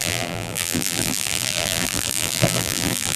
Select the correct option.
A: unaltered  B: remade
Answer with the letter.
B